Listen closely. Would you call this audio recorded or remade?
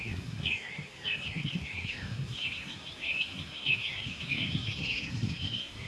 remade